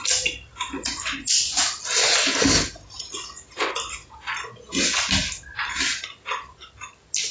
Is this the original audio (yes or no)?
yes